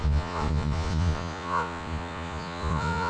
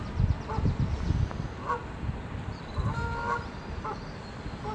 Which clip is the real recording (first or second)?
second